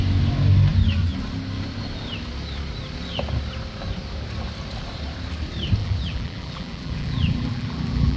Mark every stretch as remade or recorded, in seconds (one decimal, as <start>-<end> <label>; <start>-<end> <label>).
0.0-5.8 recorded; 5.8-8.2 remade